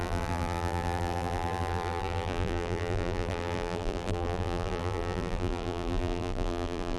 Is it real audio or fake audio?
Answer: fake